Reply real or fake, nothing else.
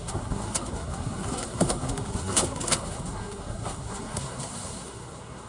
fake